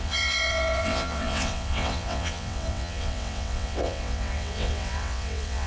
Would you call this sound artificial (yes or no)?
yes